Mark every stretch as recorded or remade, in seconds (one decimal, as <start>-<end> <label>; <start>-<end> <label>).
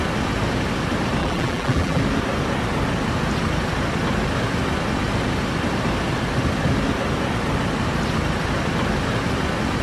0.0-1.2 recorded; 1.2-2.0 remade; 2.0-9.8 recorded